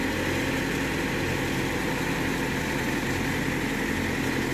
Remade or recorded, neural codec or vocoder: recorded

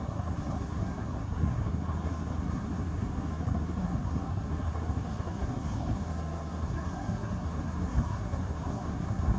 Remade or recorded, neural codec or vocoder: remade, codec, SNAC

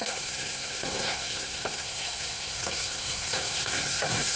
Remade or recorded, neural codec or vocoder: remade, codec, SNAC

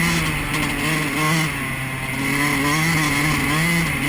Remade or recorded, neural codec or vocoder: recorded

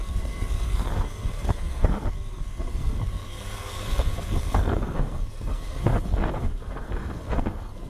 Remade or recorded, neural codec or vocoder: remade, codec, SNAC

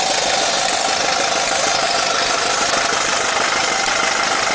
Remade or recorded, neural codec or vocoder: recorded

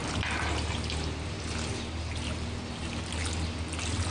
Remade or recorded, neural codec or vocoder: recorded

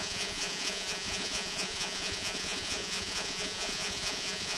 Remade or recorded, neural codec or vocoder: remade, vocoder, Vocos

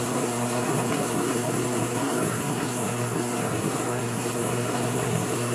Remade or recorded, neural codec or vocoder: remade, codec, SNAC